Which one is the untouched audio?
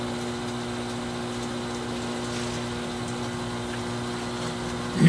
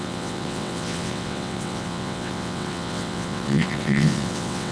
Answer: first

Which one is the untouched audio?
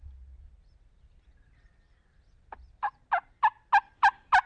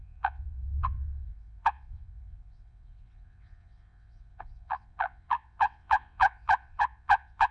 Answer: first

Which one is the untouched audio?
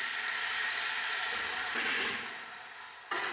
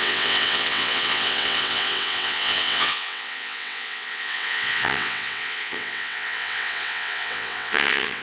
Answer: first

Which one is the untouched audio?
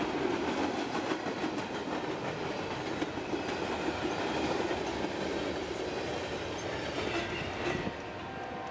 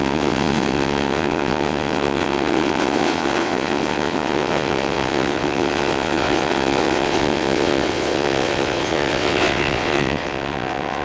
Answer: first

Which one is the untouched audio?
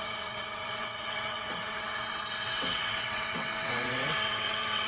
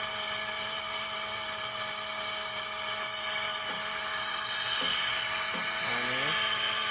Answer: second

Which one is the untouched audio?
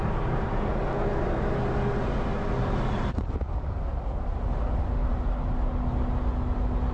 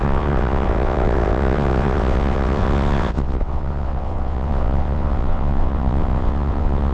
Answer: first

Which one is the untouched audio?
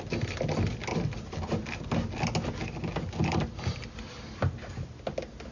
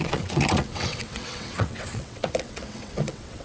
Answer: first